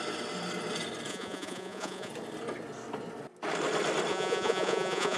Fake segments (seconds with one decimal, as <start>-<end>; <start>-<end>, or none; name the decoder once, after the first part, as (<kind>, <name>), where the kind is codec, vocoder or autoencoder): 1.1-2.1 (vocoder, Vocos); 4.1-5.2